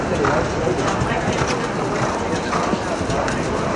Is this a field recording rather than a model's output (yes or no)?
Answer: yes